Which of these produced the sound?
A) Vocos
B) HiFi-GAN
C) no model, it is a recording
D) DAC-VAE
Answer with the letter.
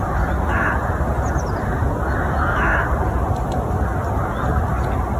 C